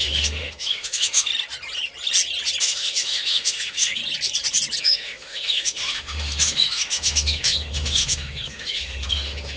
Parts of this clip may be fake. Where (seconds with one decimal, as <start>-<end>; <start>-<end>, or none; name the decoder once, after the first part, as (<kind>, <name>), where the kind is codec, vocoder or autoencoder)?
0.0-1.3 (autoencoder, DAC-VAE); 2.6-4.0; 4.8-9.6